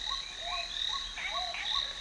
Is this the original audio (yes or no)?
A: yes